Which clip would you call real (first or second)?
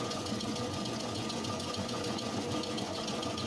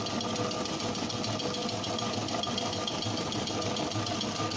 second